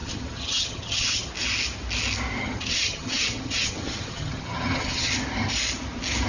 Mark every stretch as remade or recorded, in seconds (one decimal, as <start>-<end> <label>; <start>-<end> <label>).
0.0-1.3 remade; 1.3-2.4 recorded; 2.4-5.1 remade; 5.1-6.3 recorded